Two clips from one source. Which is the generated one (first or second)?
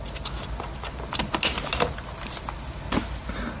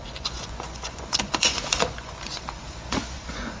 second